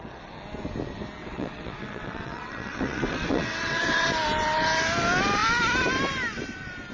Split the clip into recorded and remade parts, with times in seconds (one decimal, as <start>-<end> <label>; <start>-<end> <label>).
0.0-1.2 recorded; 1.2-4.1 remade; 4.1-6.9 recorded